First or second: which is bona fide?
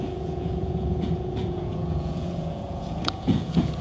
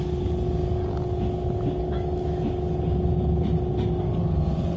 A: second